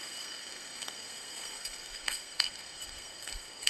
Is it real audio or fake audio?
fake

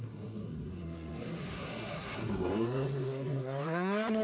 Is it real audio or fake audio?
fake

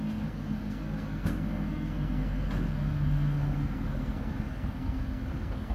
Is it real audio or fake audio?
fake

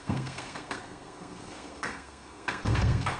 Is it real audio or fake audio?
fake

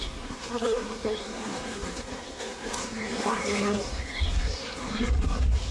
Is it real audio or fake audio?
fake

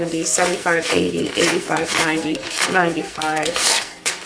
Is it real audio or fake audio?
fake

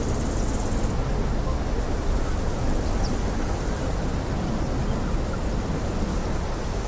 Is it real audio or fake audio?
real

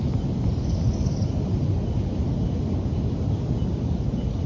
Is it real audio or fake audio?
real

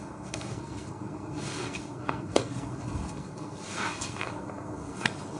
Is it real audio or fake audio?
fake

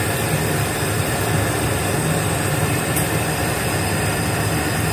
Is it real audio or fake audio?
real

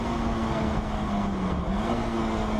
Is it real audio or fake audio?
fake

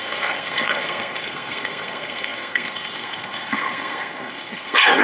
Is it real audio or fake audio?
fake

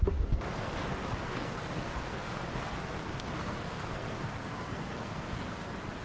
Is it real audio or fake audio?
fake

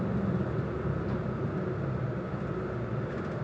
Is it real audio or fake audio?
real